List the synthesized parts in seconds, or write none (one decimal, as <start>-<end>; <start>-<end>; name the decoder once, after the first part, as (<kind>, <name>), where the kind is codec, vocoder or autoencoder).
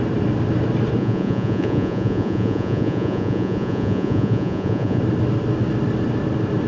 1.0-5.0 (vocoder, Vocos)